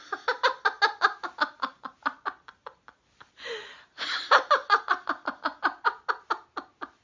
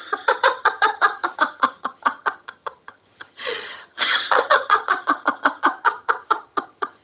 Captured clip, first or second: first